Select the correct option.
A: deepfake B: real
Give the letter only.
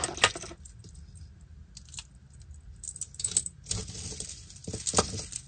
B